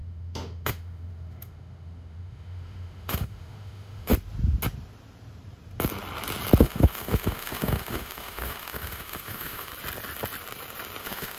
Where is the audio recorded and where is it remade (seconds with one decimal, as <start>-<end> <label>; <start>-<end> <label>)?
0.0-4.1 remade; 4.1-6.6 recorded; 6.6-9.7 remade; 9.7-11.0 recorded; 11.0-11.4 remade